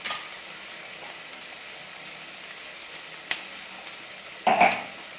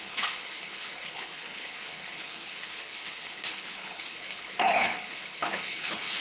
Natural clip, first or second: first